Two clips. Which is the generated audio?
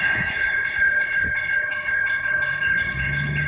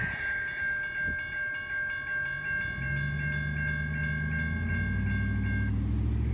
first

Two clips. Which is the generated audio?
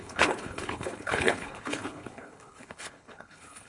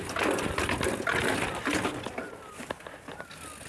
first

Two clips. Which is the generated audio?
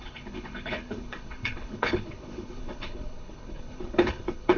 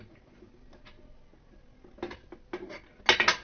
first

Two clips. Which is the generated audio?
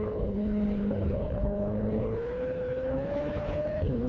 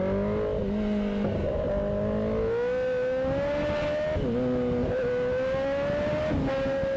first